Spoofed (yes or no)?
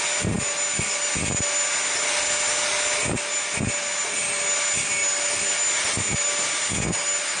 no